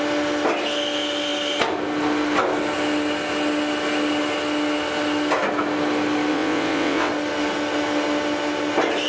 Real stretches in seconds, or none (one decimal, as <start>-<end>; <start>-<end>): 0.0-6.3; 7.1-9.1